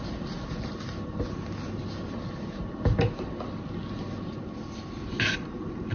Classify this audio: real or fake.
real